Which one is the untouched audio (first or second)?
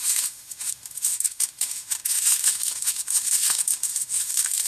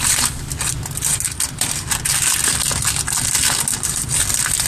second